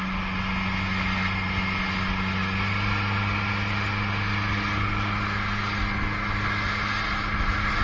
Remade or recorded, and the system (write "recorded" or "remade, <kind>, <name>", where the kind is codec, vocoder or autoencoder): recorded